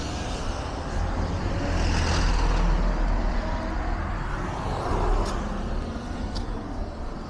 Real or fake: real